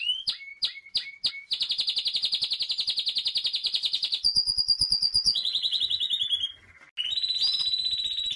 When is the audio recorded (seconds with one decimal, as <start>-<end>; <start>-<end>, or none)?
0.0-3.6; 5.8-8.4

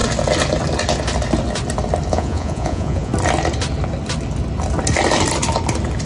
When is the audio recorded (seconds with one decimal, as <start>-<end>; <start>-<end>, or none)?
0.0-2.1; 3.1-6.1

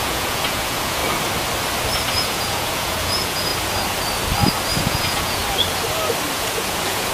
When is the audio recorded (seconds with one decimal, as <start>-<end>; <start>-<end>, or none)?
1.0-2.1; 3.5-4.8; 5.4-6.3

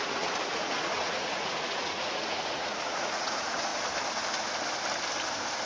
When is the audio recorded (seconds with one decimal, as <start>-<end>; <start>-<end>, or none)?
3.7-5.7

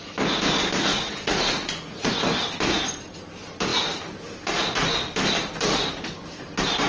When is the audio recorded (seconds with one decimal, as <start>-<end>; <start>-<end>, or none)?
0.0-0.9; 2.1-6.9

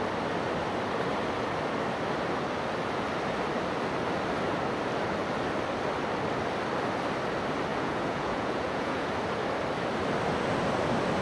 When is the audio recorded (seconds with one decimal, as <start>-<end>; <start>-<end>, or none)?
0.0-7.7; 9.1-11.2

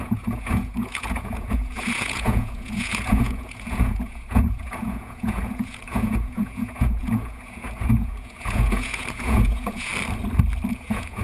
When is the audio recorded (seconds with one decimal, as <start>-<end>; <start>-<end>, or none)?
9.9-10.7